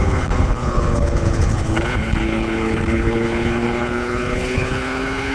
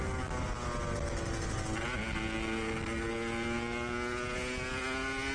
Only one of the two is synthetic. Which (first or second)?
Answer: first